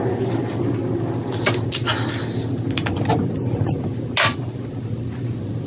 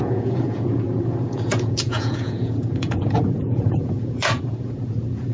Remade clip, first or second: second